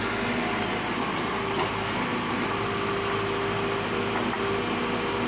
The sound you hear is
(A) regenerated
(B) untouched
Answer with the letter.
B